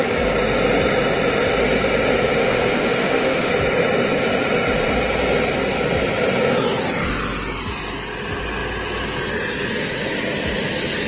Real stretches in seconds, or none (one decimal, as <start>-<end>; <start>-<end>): 0.0-2.4; 3.5-11.1